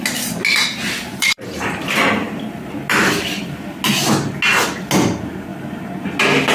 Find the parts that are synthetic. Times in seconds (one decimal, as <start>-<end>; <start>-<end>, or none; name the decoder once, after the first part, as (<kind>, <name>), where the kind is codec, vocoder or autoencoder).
1.1-2.0 (vocoder, BigVGAN v2)